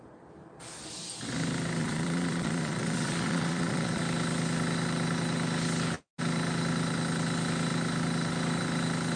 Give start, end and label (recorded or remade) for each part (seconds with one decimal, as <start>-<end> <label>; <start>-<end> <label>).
0.0-1.8 recorded; 1.8-4.0 remade; 4.0-9.2 recorded